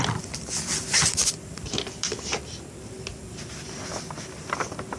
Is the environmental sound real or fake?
real